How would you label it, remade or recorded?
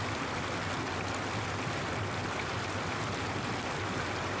recorded